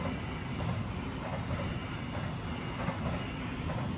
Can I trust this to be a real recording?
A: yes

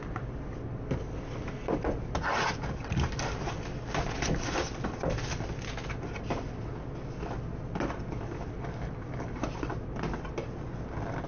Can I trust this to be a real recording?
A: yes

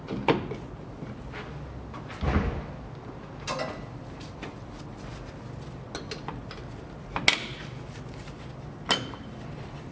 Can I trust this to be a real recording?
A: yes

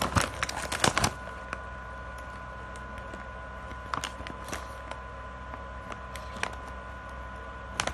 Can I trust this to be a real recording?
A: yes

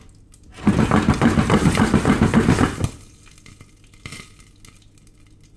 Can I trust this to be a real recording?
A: yes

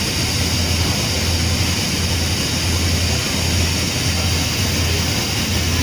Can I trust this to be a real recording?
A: yes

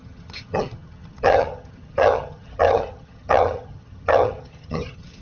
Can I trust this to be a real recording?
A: no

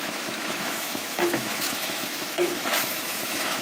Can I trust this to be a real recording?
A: no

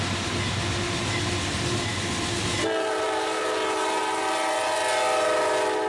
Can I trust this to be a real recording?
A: yes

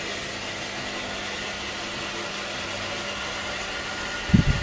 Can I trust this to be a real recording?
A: yes